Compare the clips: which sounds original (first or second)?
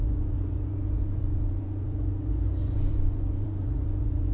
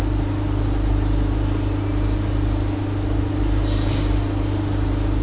second